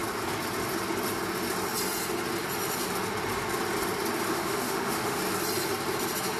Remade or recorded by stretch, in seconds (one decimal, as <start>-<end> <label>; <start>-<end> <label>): 0.0-4.3 recorded; 4.3-5.2 remade; 5.2-6.4 recorded